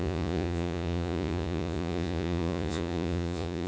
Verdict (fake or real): fake